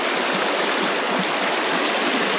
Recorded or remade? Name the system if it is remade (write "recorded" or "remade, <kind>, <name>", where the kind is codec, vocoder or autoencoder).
recorded